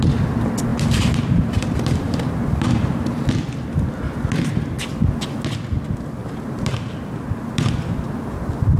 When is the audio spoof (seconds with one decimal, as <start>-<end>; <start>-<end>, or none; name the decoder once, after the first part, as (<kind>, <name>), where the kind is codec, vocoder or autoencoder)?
0.7-3.3 (vocoder, BigVGAN v2); 6.2-7.4